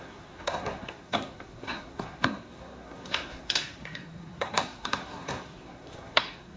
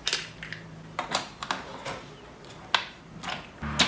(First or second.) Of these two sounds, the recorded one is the second